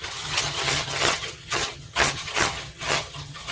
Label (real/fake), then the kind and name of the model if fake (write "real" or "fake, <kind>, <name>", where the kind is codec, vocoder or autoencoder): fake, vocoder, HiFi-GAN